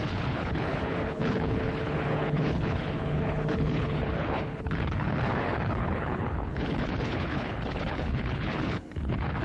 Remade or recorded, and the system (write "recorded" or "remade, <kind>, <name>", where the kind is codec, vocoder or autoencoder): remade, codec, HILCodec